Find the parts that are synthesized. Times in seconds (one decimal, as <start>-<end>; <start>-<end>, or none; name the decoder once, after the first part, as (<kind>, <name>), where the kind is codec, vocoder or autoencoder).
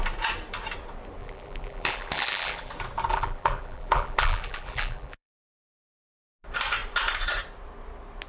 1.2-2.7 (vocoder, BigVGAN v2); 3.1-5.8